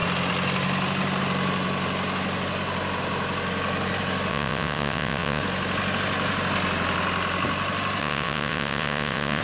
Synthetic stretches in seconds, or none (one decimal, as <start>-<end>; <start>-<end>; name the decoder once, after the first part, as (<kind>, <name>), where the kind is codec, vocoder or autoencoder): 4.3-5.4 (vocoder, WaveNeXt); 8.0-9.4